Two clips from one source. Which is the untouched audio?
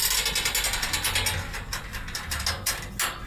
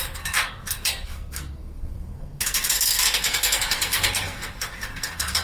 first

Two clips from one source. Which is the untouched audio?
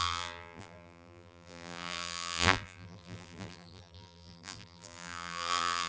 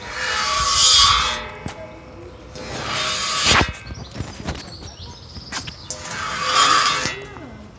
second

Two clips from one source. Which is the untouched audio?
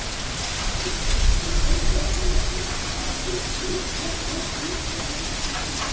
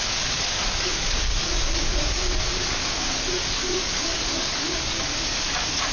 first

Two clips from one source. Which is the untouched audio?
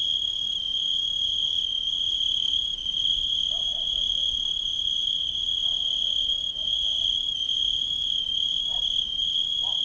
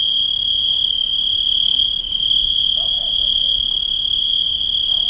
second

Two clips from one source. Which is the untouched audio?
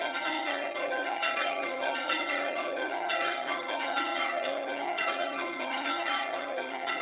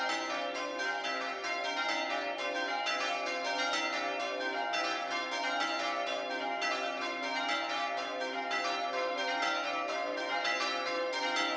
second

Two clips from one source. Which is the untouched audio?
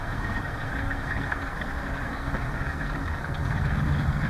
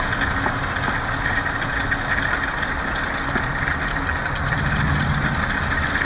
second